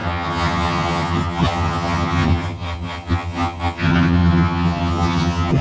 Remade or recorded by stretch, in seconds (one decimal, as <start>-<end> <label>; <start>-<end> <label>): 0.0-5.6 remade